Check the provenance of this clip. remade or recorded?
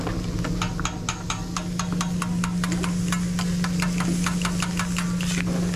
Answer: recorded